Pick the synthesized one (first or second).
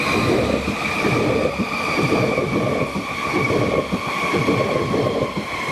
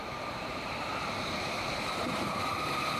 second